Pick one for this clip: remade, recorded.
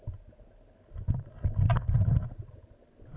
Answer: recorded